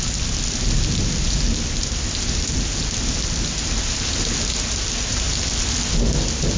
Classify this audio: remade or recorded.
recorded